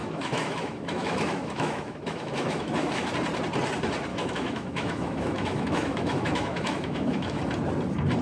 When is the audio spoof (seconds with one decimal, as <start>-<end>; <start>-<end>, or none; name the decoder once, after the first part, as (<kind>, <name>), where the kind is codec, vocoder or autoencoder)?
0.0-3.1 (autoencoder, DAC-VAE); 4.1-7.4